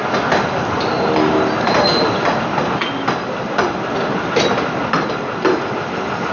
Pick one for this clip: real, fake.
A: real